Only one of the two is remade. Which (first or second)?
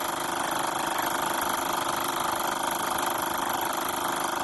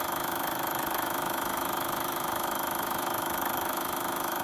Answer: second